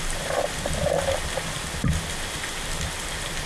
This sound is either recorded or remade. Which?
remade